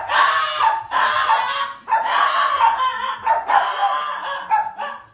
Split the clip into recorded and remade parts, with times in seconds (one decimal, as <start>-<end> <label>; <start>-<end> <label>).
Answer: 0.0-5.1 recorded